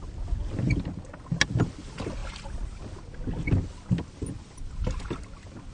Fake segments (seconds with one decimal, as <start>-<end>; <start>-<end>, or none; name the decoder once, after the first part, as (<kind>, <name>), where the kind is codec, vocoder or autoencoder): none